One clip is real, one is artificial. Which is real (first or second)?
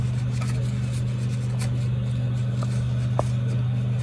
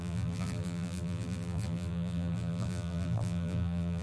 first